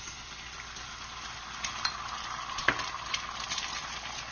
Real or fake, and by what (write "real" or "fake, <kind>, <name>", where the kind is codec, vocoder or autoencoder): real